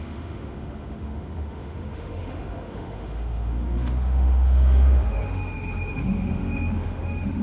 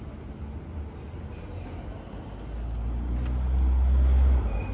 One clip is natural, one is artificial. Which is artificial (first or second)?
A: first